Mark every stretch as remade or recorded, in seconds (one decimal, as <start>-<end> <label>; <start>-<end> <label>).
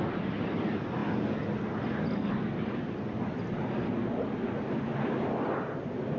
0.0-6.2 recorded